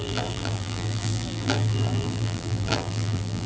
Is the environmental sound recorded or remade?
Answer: remade